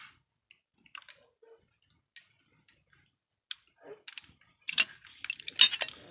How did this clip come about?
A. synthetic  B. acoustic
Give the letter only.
B